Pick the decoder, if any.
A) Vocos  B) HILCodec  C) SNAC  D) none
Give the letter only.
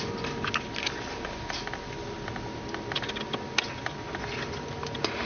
D